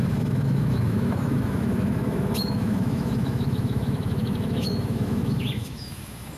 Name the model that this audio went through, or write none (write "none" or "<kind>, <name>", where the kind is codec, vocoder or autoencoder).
autoencoder, DAC-VAE